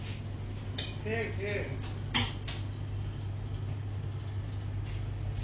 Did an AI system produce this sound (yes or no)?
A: no